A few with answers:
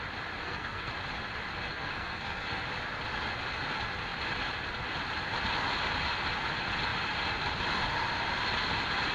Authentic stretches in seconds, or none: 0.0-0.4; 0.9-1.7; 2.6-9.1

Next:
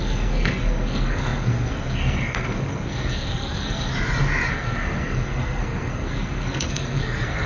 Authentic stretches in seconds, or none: 3.9-4.5

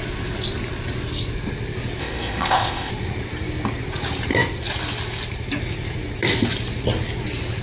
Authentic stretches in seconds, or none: 0.0-2.0; 2.9-7.6

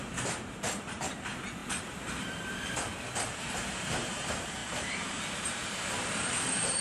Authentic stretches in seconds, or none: 2.9-3.4

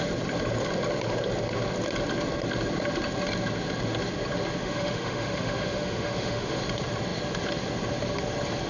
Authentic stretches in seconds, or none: 0.0-4.6; 6.6-8.7

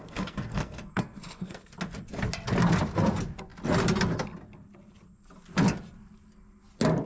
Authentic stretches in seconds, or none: 1.7-7.1

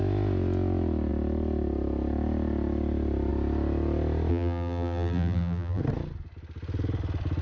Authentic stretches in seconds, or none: 0.0-4.3; 5.8-7.4